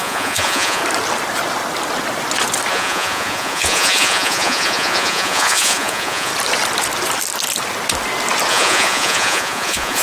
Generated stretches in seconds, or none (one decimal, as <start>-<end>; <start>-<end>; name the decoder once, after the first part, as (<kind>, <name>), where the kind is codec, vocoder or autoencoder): 0.0-0.8 (vocoder, Vocos); 2.7-6.3; 8.5-10.0